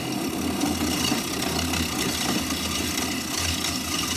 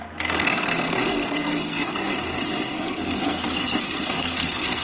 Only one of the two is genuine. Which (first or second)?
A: first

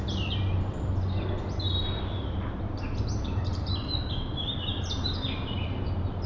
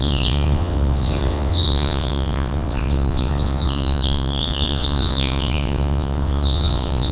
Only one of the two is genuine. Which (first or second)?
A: first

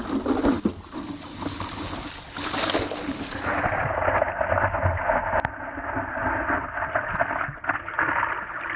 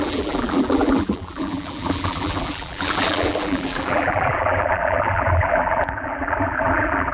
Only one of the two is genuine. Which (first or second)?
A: first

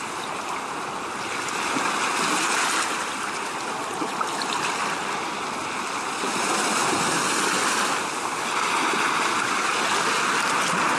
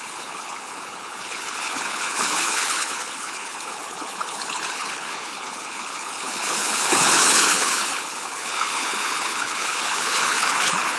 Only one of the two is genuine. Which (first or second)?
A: first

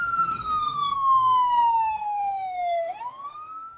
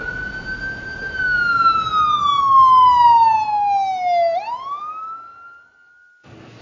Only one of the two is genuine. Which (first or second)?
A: second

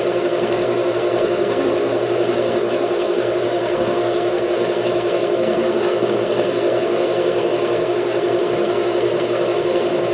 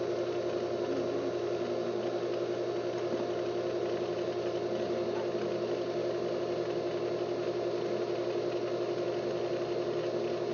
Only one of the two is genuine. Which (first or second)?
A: second